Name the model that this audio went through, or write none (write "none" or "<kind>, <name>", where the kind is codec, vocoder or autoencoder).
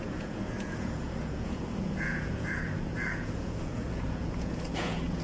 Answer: vocoder, Vocos